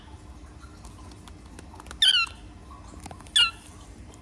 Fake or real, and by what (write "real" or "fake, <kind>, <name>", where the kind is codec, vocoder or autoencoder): real